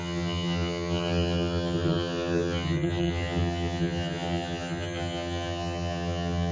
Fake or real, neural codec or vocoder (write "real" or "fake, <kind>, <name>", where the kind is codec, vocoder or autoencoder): fake, vocoder, HiFi-GAN